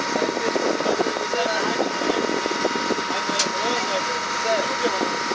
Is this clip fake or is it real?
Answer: real